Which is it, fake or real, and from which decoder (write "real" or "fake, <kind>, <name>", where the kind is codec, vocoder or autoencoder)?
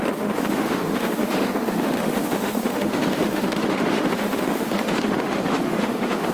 fake, autoencoder, DAC-VAE